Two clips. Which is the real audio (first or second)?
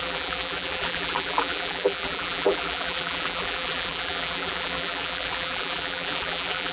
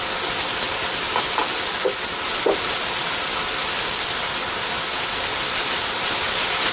second